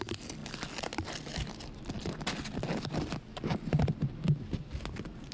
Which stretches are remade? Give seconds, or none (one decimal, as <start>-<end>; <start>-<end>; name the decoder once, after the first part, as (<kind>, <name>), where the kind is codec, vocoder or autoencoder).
none